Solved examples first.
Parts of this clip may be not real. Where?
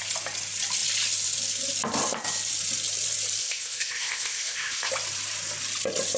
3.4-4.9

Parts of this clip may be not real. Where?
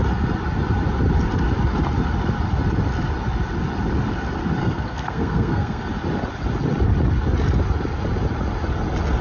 4.6-5.8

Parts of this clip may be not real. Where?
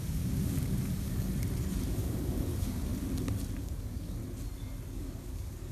0.0-1.3; 1.9-2.9; 3.6-4.2; 4.9-5.7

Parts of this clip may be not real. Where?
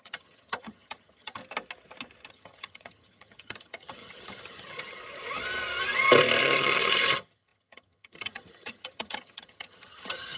0.0-1.4; 2.3-5.0; 6.4-10.4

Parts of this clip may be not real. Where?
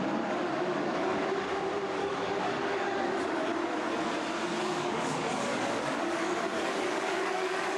0.0-3.5; 4.6-7.8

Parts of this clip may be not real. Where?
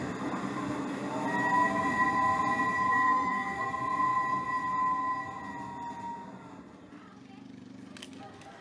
2.9-3.7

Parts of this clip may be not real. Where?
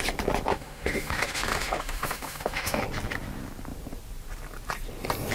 0.5-2.8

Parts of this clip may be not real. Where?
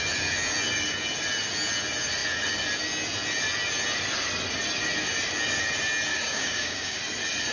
6.1-7.0